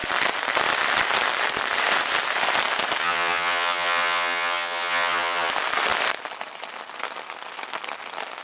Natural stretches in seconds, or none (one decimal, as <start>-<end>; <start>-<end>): 0.0-3.0; 5.5-8.4